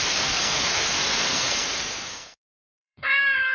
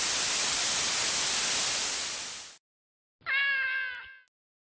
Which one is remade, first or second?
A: first